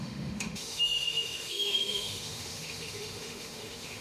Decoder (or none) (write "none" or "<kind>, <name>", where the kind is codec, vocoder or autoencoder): autoencoder, DAC-VAE